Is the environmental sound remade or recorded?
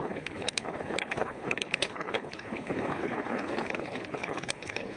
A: remade